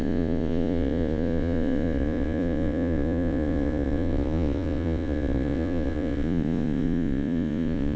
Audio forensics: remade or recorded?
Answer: remade